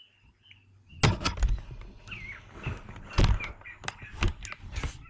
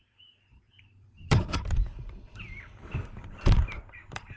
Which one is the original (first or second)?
first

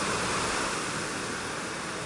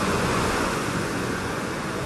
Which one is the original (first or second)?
first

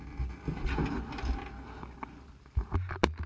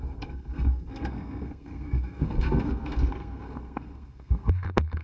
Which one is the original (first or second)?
first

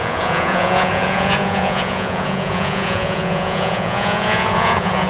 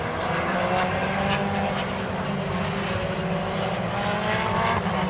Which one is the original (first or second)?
second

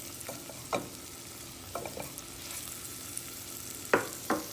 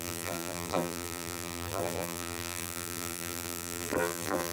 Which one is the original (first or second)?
first